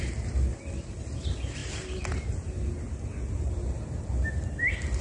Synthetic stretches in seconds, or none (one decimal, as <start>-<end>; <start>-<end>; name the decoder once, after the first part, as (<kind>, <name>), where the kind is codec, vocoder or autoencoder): none